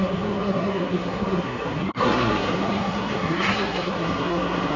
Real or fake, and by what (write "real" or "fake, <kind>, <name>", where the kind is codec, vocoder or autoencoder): fake, codec, SNAC